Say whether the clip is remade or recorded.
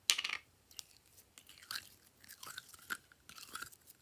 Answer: recorded